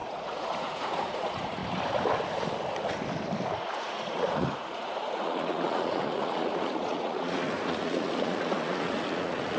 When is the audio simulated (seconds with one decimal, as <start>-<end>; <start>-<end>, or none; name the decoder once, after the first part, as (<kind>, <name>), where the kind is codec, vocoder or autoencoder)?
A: 0.0-1.6 (vocoder, Vocos); 3.6-9.6